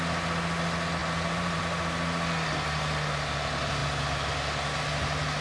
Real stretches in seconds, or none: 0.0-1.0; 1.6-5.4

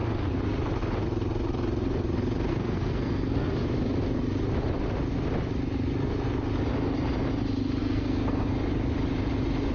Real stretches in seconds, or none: 0.0-2.5; 3.5-7.8; 8.5-9.7

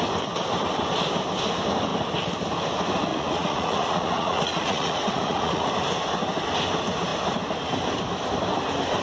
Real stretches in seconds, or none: 0.0-3.1; 5.7-9.0

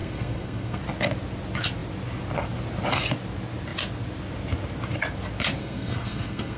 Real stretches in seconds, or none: 0.8-5.6

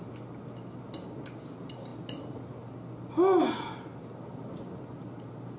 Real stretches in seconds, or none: 0.0-5.6

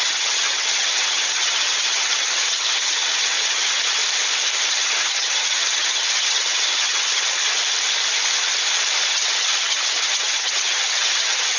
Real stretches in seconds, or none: 4.0-4.7; 7.4-9.1

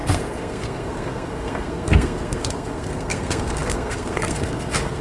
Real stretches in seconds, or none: none

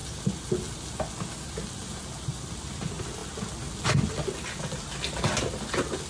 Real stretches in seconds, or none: 0.0-6.1